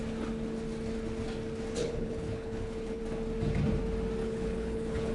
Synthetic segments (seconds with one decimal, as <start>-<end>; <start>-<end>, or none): 1.8-3.0; 4.2-5.1